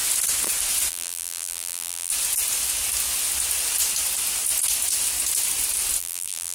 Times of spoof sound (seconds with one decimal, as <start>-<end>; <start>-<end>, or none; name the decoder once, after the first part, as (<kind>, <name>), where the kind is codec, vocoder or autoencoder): 0.9-2.1 (vocoder, BigVGAN v2); 6.0-6.5